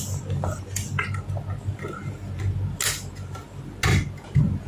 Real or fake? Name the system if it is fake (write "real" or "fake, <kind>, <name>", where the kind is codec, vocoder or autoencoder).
real